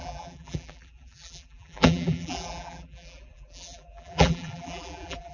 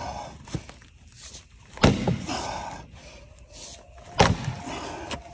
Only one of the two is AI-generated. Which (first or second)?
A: first